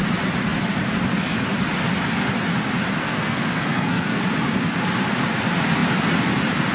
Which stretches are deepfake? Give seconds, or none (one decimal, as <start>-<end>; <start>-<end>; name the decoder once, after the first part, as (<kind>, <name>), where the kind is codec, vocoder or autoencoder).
3.0-4.2 (codec, SNAC)